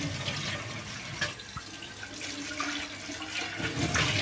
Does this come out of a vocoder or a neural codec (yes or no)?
no